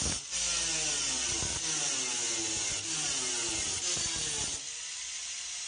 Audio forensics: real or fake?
real